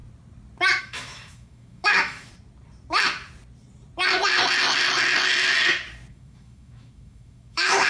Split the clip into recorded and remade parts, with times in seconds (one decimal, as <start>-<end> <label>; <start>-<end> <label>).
0.0-0.8 recorded; 0.8-2.3 remade; 2.3-6.1 recorded; 6.1-7.9 remade